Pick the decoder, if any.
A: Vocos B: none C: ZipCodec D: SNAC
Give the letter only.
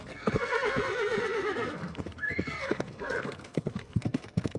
D